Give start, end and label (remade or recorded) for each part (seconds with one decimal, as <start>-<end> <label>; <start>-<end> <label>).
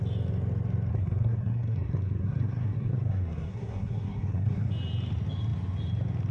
0.0-0.9 recorded; 0.9-4.7 remade; 4.7-6.3 recorded